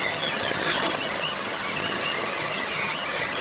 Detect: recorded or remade remade